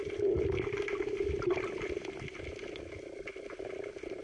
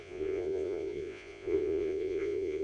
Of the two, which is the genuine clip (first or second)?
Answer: first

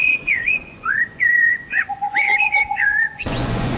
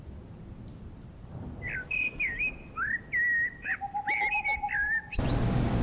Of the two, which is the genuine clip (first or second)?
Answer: second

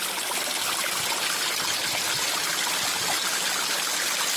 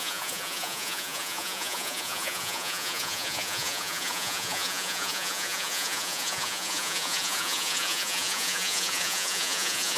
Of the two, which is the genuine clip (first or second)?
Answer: first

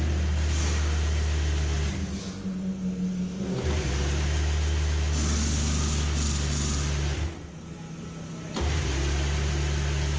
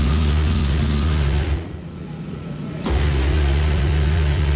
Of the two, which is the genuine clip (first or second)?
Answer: first